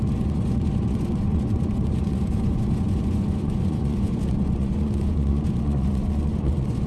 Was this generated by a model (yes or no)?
yes